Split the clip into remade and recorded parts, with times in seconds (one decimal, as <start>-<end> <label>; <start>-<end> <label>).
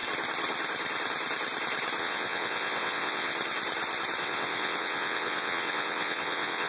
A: 0.0-2.0 recorded; 2.0-3.3 remade; 3.3-4.2 recorded; 4.2-6.7 remade